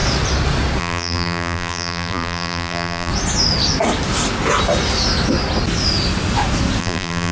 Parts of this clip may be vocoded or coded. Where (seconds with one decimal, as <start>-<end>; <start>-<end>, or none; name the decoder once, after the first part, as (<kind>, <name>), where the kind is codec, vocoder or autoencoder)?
0.8-3.1 (vocoder, BigVGAN v2); 6.8-7.3